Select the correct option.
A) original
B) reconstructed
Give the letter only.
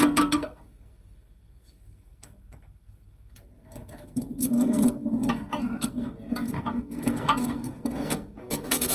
B